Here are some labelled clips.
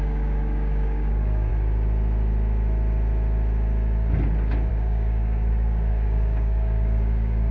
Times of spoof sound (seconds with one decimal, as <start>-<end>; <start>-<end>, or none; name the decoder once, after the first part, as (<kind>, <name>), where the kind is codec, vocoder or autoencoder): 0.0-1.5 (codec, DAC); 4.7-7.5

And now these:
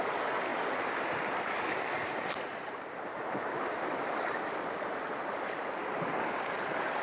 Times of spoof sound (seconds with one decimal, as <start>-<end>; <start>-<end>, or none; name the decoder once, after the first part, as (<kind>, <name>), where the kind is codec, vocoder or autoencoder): none

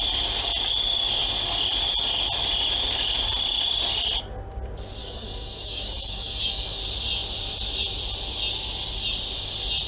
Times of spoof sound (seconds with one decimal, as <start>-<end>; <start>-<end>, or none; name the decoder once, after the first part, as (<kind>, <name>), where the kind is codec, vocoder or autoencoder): 5.0-6.8 (codec, DAC)